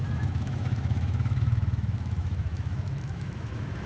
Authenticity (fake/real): fake